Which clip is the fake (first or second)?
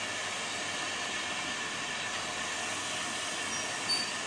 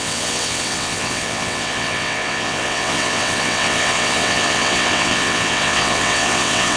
second